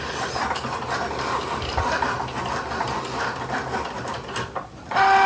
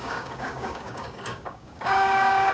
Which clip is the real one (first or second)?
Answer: first